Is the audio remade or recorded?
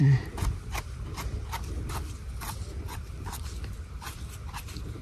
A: recorded